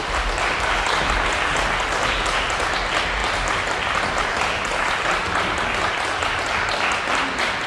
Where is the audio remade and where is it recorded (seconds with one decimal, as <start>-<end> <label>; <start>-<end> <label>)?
0.0-7.7 recorded

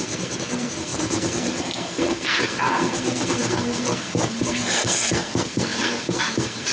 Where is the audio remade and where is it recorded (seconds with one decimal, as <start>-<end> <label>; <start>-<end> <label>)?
0.0-6.7 remade

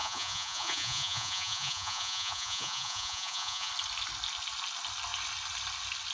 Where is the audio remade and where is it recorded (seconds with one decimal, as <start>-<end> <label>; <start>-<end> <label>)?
0.0-3.7 remade; 3.7-6.1 recorded

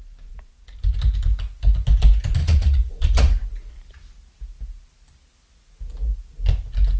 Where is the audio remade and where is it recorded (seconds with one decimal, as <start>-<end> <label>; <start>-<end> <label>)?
0.0-2.4 recorded; 2.4-3.3 remade; 3.3-7.0 recorded

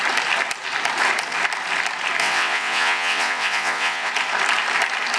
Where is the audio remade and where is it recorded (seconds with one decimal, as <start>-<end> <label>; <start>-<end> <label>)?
0.0-2.2 recorded; 2.2-4.1 remade; 4.1-5.2 recorded